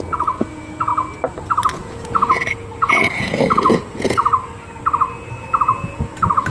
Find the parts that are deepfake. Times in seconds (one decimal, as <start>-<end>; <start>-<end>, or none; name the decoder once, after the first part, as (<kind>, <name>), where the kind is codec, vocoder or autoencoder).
0.0-0.9 (vocoder, Vocos); 1.7-4.2; 5.5-6.5